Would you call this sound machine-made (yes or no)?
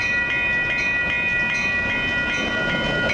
no